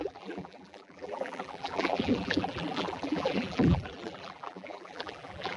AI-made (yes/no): yes